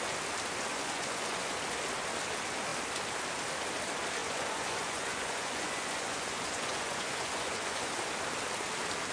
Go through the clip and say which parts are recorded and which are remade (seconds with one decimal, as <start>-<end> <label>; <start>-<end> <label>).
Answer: 0.0-0.7 recorded; 0.7-1.5 remade; 1.5-4.2 recorded; 4.2-7.9 remade; 7.9-9.1 recorded